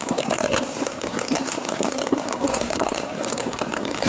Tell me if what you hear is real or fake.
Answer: fake